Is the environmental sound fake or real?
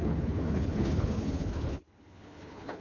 fake